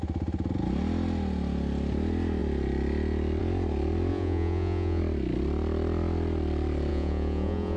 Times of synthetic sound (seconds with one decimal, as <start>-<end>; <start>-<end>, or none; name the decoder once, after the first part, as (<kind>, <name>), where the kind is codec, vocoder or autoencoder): 4.1-5.0 (vocoder, Vocos); 6.9-7.8